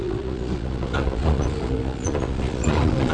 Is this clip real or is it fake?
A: fake